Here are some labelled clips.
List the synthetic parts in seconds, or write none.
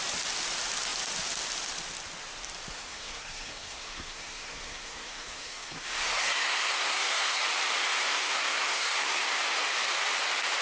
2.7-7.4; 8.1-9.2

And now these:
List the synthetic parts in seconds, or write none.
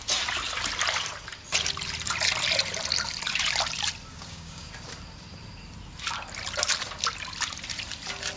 4.1-4.7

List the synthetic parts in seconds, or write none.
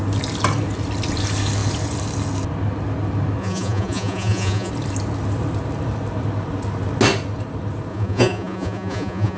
3.4-4.7; 7.9-9.4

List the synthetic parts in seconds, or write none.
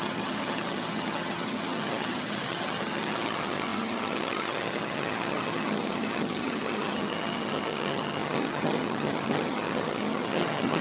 0.0-10.8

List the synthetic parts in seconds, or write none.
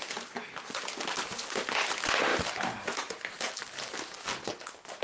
none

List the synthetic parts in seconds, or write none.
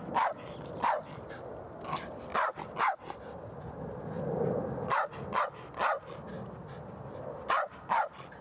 none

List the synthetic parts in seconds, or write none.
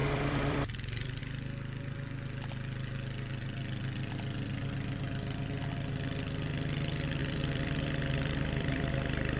0.0-1.2; 7.2-8.9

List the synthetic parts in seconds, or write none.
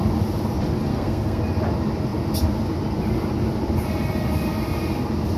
0.9-1.4